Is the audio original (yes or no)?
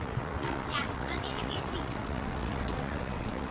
no